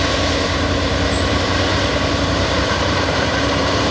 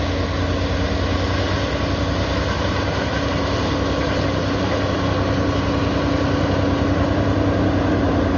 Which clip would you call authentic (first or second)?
second